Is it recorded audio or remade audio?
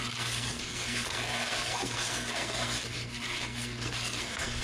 remade